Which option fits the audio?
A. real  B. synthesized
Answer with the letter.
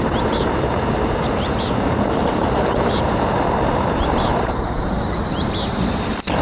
B